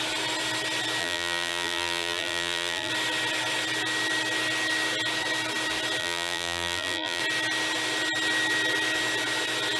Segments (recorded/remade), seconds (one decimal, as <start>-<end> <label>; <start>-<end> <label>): 0.0-1.0 recorded; 1.0-2.9 remade; 2.9-6.0 recorded; 6.0-7.2 remade; 7.2-9.8 recorded